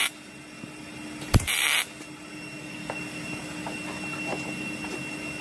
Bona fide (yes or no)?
yes